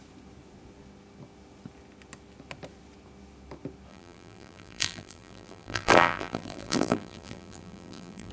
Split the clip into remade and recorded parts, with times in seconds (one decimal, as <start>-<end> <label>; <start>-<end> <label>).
0.0-3.9 recorded; 3.9-8.3 remade